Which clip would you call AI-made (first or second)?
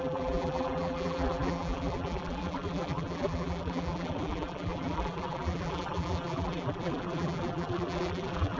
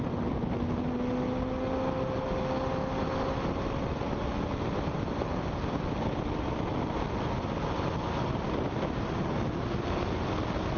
first